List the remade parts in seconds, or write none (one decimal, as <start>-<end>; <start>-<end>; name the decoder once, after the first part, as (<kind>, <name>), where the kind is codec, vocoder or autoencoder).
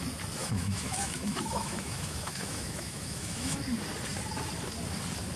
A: 0.4-3.6 (autoencoder, DAC-VAE)